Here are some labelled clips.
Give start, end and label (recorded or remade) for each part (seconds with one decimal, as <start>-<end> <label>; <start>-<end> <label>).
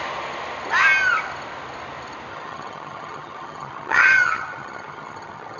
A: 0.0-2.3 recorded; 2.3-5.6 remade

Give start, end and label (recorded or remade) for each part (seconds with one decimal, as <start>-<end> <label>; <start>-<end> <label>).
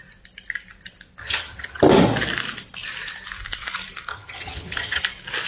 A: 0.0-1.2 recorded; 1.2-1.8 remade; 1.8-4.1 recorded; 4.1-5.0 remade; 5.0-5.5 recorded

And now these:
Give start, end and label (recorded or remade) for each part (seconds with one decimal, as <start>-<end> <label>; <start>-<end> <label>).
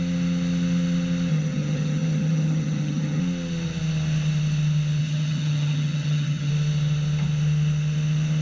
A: 0.0-1.3 recorded; 1.3-3.2 remade; 3.2-5.0 recorded; 5.0-6.5 remade; 6.5-8.4 recorded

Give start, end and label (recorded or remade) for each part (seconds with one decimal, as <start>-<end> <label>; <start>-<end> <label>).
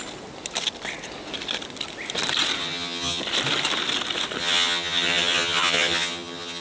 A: 0.0-2.6 recorded; 2.6-3.2 remade; 3.2-4.4 recorded; 4.4-6.6 remade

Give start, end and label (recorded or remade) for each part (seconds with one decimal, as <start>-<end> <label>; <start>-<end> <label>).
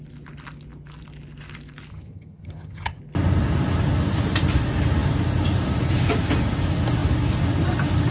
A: 0.0-1.9 recorded; 1.9-3.0 remade; 3.0-8.1 recorded